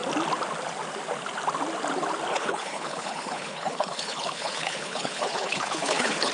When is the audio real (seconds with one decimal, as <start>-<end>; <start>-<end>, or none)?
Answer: 0.0-2.3

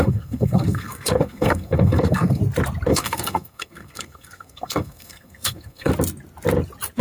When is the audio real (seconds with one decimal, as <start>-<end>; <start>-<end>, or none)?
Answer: 2.4-2.9; 5.9-7.0